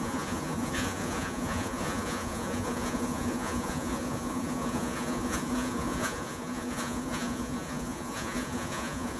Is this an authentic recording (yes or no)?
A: no